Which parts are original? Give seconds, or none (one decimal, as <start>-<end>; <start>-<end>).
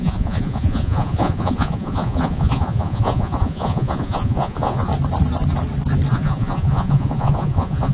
4.9-6.1